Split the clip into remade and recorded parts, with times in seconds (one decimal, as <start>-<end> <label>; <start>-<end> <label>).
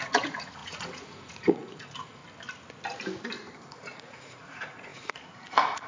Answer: 0.0-2.2 remade; 2.2-3.6 recorded; 3.6-5.9 remade